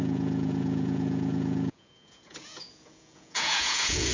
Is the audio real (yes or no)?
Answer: no